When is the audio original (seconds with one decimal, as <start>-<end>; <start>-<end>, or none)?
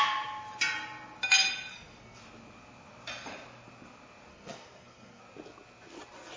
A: 0.0-1.7; 2.2-4.3; 5.2-6.4